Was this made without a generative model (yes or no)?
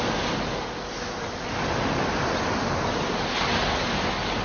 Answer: yes